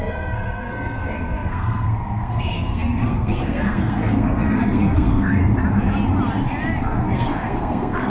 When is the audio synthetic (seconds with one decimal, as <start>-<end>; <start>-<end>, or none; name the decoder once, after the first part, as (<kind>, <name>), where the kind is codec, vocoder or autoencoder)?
0.0-5.4 (codec, SNAC); 6.8-8.1